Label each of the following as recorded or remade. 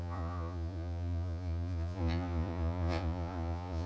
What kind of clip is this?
remade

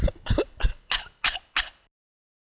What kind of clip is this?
recorded